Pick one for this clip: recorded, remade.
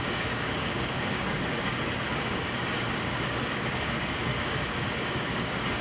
remade